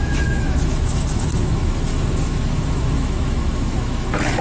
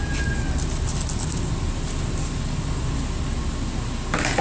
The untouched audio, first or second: second